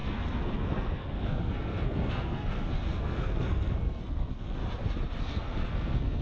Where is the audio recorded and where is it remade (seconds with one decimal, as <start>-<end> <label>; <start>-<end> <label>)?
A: 0.0-4.6 remade; 4.6-5.2 recorded; 5.2-6.2 remade